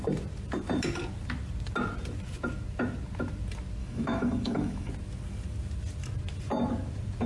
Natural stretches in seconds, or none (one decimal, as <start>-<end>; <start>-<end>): 0.0-3.8; 4.9-7.3